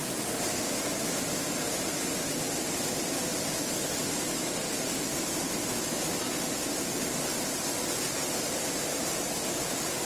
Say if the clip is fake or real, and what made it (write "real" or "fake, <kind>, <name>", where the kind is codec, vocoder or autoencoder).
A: real